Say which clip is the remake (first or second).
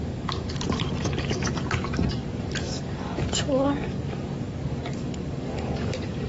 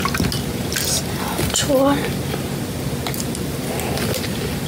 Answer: first